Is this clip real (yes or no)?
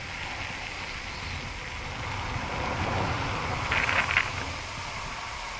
yes